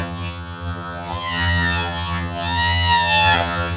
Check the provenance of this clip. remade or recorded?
remade